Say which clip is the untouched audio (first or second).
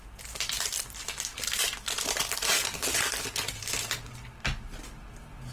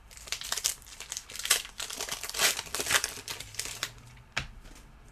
first